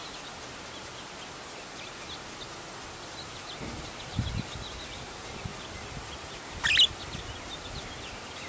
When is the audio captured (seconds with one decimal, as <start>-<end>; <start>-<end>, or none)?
0.0-8.5